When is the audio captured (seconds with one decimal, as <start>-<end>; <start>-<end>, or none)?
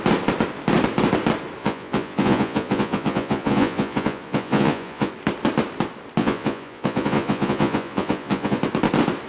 0.0-1.6; 5.1-6.2; 8.6-9.3